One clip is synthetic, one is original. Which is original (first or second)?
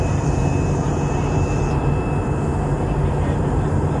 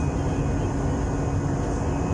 second